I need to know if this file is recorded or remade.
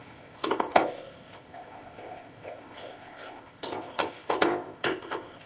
remade